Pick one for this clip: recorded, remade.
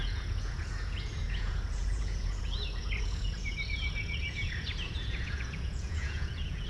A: remade